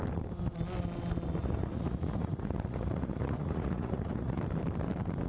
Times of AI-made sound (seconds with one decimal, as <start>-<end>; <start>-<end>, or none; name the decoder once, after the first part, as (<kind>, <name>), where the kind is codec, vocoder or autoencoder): 1.4-4.4 (vocoder, Vocos)